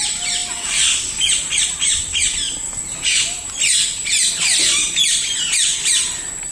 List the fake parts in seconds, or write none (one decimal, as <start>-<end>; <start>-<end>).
none